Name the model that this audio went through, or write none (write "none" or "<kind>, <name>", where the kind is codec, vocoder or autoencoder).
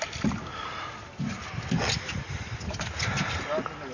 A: none